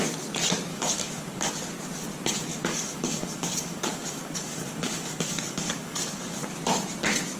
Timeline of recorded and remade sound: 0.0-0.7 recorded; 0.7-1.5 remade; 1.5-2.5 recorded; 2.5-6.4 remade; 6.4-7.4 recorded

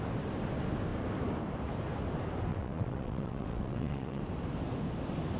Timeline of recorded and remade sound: 0.0-2.5 recorded; 2.5-4.2 remade; 4.2-5.4 recorded